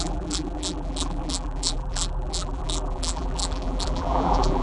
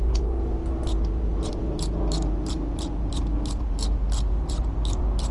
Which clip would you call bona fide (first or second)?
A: second